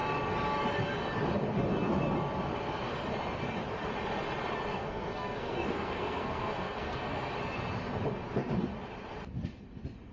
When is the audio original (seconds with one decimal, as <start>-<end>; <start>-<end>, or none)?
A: 0.0-4.7; 7.3-10.1